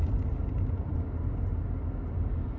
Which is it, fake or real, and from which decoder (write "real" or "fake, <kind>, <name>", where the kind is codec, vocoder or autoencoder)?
real